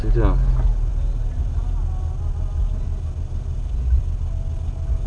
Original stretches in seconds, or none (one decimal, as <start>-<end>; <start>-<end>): 0.0-5.1